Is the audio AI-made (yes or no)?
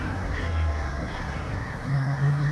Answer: yes